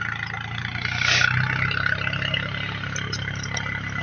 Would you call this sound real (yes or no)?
yes